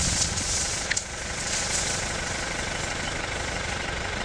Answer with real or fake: fake